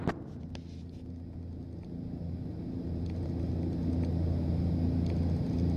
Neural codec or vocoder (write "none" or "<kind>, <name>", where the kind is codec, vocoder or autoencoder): none